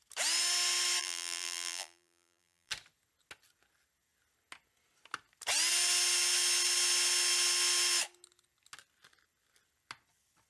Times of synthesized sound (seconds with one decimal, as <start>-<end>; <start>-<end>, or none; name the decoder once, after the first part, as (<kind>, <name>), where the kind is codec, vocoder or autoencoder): 1.0-2.7 (vocoder, BigVGAN v2)